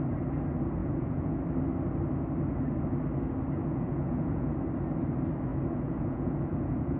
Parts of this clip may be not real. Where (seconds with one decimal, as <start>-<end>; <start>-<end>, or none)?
0.8-1.4; 3.6-4.5; 5.5-7.0